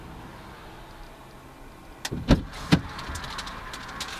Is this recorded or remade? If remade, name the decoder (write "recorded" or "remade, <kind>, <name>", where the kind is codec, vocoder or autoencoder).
recorded